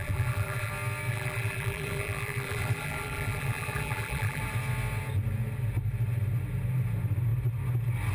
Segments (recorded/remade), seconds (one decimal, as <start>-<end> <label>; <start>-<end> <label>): 0.0-0.7 remade; 0.7-1.1 recorded; 1.1-4.4 remade; 4.4-8.1 recorded